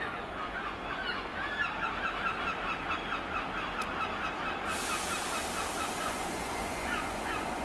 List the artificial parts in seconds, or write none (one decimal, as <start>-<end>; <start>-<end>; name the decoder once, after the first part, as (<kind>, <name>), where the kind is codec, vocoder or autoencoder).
0.0-1.3 (vocoder, Vocos); 5.9-7.6